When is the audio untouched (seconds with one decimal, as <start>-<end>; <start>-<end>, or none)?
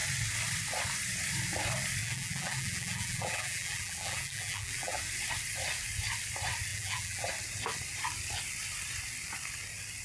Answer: 0.0-2.0; 5.0-6.7; 7.3-10.0